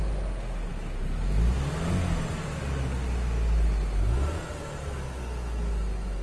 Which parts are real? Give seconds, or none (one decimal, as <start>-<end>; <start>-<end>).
0.0-6.2